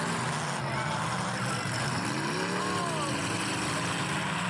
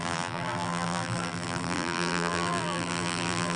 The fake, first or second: second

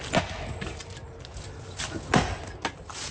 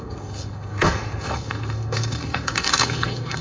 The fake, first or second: second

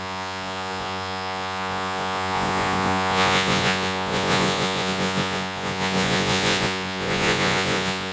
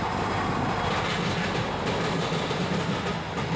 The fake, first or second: first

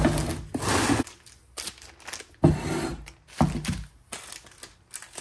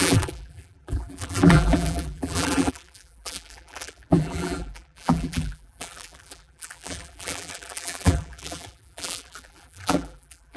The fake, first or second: second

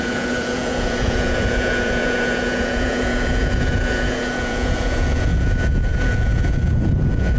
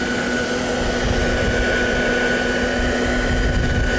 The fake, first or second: first